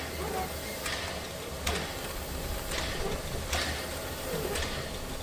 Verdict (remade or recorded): recorded